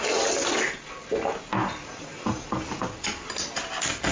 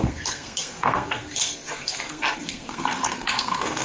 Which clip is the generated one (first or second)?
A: second